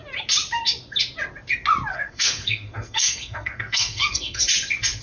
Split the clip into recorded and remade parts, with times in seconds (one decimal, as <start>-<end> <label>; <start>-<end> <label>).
0.0-1.9 recorded; 1.9-4.4 remade; 4.4-5.0 recorded